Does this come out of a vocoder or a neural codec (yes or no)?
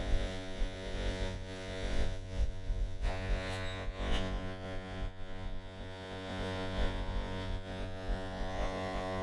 yes